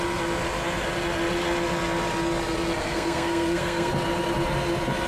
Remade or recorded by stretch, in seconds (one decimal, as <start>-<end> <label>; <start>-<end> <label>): 0.0-2.8 recorded; 2.8-3.9 remade; 3.9-5.1 recorded